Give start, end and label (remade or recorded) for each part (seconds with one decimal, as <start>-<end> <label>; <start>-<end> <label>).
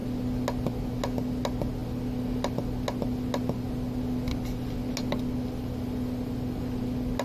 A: 0.0-7.2 recorded